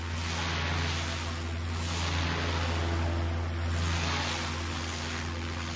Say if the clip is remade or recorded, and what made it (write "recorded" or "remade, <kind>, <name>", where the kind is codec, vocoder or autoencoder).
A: recorded